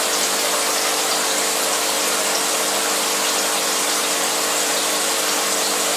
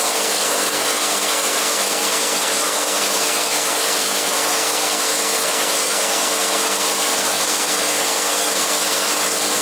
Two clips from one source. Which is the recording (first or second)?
first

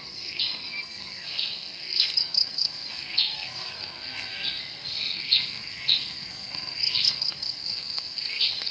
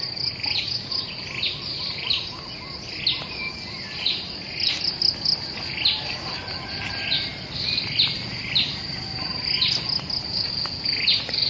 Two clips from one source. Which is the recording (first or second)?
second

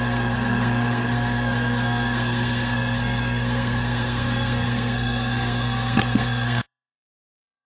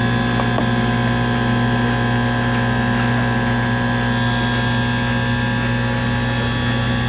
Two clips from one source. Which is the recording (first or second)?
second